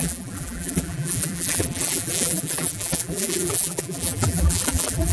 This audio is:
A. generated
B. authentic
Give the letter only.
A